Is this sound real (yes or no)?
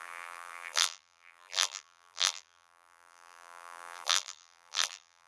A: no